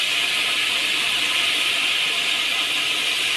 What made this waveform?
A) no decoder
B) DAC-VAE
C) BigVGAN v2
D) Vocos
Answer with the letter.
C